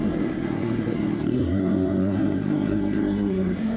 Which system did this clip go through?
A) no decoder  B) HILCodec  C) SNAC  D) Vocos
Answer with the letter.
C